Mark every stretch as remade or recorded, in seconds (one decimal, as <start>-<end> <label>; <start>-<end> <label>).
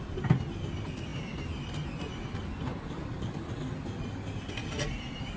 0.0-1.1 recorded; 1.1-1.7 remade; 1.7-5.4 recorded